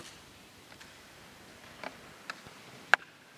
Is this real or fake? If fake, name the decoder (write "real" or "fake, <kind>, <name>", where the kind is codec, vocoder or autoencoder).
real